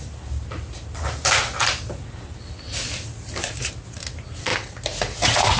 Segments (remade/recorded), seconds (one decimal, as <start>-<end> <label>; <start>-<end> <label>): 0.0-5.6 recorded